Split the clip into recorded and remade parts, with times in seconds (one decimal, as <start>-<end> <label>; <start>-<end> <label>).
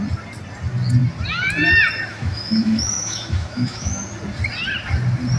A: 0.0-2.1 recorded; 2.1-4.0 remade; 4.0-5.4 recorded